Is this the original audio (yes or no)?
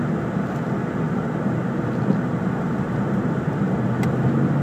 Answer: yes